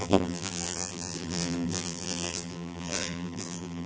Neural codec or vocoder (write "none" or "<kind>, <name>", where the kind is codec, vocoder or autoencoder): vocoder, BigVGAN v2